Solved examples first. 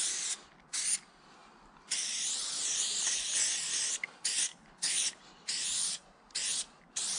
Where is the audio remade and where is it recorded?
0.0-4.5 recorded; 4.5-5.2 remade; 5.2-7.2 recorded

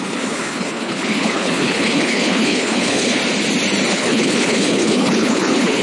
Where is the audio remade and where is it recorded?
0.0-3.2 remade; 3.2-3.9 recorded; 3.9-5.8 remade

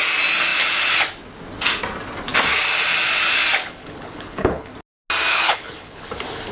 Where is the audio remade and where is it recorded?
0.0-3.6 recorded; 3.6-4.7 remade; 4.7-5.3 recorded; 5.3-6.1 remade; 6.1-6.5 recorded

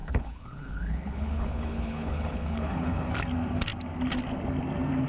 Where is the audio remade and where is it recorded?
0.0-3.1 remade; 3.1-5.1 recorded

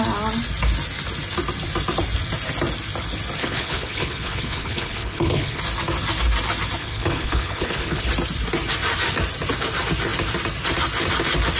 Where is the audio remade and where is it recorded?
0.0-3.4 recorded; 3.4-5.6 remade; 5.6-6.8 recorded; 6.8-8.1 remade; 8.1-11.6 recorded

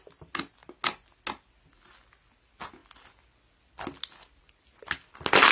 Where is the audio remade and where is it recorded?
0.0-5.5 recorded

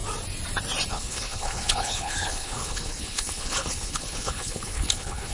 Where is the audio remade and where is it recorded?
0.0-0.9 recorded; 0.9-5.3 remade